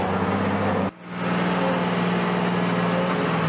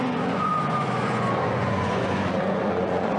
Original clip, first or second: first